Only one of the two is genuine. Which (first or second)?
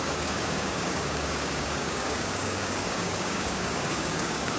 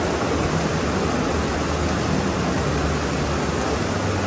second